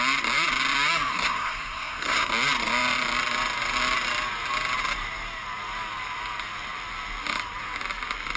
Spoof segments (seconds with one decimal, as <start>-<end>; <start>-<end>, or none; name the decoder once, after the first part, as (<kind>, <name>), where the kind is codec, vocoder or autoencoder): 1.1-2.3 (codec, SNAC)